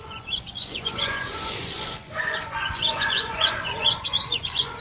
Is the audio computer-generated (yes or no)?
yes